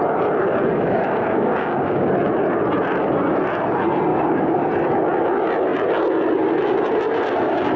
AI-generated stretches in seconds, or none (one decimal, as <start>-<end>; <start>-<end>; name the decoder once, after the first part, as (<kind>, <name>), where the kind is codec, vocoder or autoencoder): 0.7-2.1 (codec, DAC); 4.1-4.7